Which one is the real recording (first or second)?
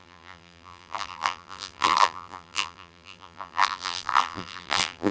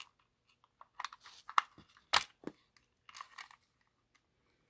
second